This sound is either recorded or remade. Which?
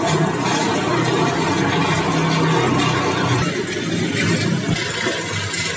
recorded